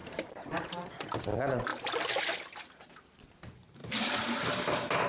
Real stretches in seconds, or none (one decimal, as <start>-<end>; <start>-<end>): 0.9-3.8